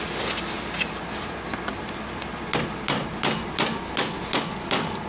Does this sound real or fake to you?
real